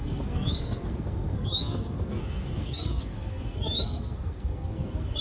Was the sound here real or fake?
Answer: fake